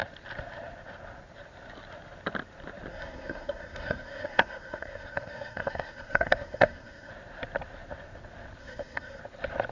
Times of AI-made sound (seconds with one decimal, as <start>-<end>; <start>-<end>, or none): 2.9-7.1; 8.6-9.2